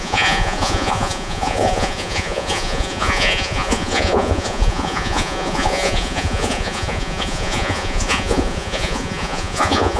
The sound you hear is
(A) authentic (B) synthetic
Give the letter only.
B